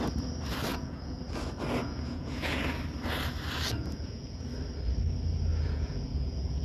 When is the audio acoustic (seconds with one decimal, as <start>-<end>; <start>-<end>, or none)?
0.0-0.7; 1.2-1.8; 2.6-3.8; 4.5-5.5

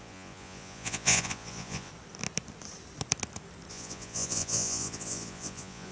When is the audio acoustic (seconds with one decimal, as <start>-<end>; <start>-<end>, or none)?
1.9-3.7

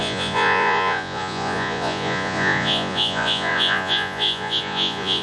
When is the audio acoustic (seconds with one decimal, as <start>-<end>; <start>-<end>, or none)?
none

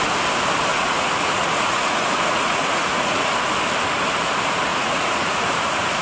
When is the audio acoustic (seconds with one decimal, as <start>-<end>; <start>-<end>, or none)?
0.0-0.7; 3.3-4.7

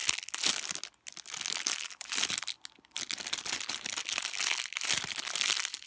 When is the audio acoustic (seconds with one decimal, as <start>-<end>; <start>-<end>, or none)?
0.0-5.9